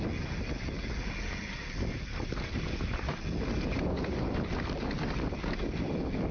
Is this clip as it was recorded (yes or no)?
yes